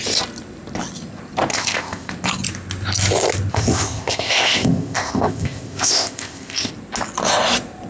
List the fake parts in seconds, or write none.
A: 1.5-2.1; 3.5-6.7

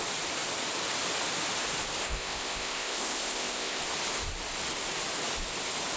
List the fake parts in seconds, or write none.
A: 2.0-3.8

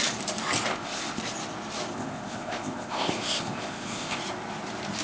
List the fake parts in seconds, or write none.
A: 0.7-1.2; 1.9-4.2